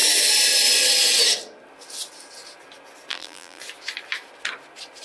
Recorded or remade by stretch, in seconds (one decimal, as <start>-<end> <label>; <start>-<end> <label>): 0.0-3.1 recorded; 3.1-3.6 remade; 3.6-5.0 recorded